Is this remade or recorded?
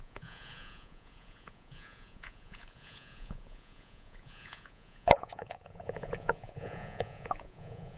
remade